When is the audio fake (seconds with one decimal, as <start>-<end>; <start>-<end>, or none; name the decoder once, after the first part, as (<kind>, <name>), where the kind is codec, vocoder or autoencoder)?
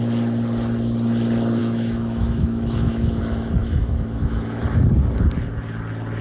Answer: 1.6-3.2 (autoencoder, DAC-VAE); 3.6-4.6